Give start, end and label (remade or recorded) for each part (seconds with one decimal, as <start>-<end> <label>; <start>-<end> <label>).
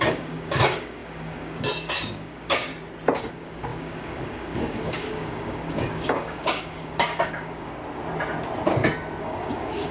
0.0-2.7 remade; 2.7-3.3 recorded; 3.3-7.8 remade; 7.8-9.2 recorded; 9.2-9.9 remade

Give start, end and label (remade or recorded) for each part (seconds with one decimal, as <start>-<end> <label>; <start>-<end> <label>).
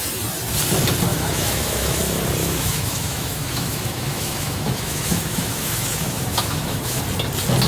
0.0-1.1 recorded; 1.1-2.0 remade; 2.0-2.4 recorded; 2.4-7.0 remade; 7.0-7.7 recorded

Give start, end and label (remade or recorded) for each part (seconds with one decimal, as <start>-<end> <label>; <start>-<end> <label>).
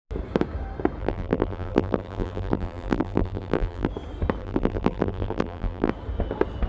0.0-1.0 recorded; 1.0-3.9 remade; 3.9-4.4 recorded; 4.4-5.9 remade; 5.9-6.7 recorded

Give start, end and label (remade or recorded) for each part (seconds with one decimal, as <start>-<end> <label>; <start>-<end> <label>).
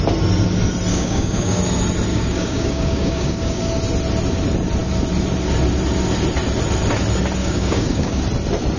0.0-0.9 recorded; 0.9-1.6 remade; 1.6-2.1 recorded; 2.1-3.8 remade; 3.8-7.4 recorded; 7.4-8.2 remade; 8.2-8.8 recorded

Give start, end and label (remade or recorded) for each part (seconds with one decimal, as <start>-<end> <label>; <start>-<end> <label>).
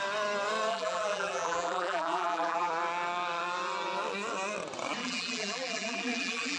0.0-0.7 recorded; 0.7-2.7 remade; 2.7-5.0 recorded; 5.0-6.6 remade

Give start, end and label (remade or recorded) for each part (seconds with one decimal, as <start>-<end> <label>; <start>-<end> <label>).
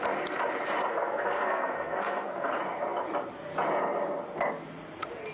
0.0-0.9 recorded; 0.9-2.5 remade; 2.5-5.3 recorded